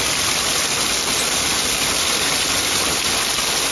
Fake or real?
real